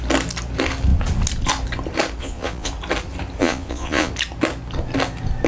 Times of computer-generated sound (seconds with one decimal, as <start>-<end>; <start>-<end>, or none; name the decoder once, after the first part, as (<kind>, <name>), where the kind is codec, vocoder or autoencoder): 2.2-2.7 (vocoder, Vocos); 3.4-4.1